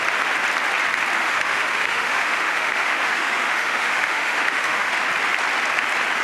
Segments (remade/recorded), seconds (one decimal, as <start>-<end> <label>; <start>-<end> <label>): 0.0-1.2 recorded; 1.2-4.9 remade; 4.9-6.2 recorded

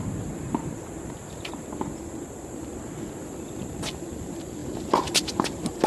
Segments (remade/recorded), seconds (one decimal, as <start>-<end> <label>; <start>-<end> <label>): 0.0-5.9 recorded

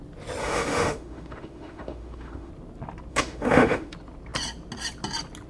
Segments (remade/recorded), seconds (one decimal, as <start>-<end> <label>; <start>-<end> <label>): 0.0-0.4 recorded; 0.4-2.5 remade; 2.5-3.1 recorded; 3.1-3.9 remade; 3.9-5.5 recorded

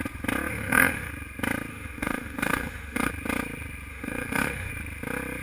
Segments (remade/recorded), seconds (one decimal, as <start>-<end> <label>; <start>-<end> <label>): 0.0-0.5 recorded; 0.5-1.1 remade; 1.1-1.7 recorded; 1.7-3.1 remade; 3.1-3.9 recorded; 3.9-4.7 remade; 4.7-5.4 recorded

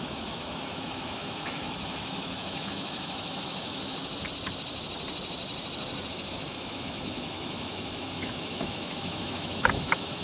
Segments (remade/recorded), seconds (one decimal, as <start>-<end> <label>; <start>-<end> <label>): 0.0-4.0 remade; 4.0-6.1 recorded; 6.1-10.2 remade

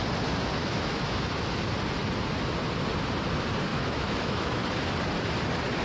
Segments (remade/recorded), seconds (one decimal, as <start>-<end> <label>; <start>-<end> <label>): 0.0-0.6 recorded; 0.6-1.2 remade; 1.2-3.7 recorded; 3.7-4.6 remade; 4.6-5.8 recorded

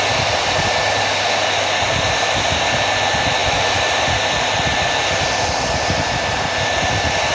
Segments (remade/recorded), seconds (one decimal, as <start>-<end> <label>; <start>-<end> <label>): 0.0-7.3 recorded